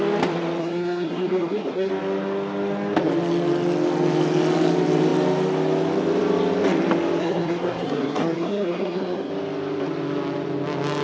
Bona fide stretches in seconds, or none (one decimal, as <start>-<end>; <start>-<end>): 0.0-0.6; 1.9-7.2; 9.3-11.0